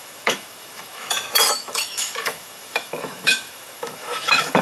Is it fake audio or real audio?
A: fake